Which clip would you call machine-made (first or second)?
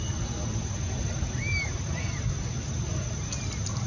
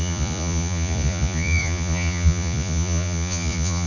second